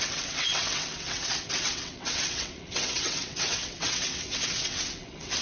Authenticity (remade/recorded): remade